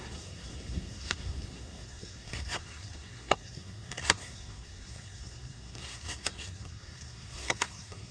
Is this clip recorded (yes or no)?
no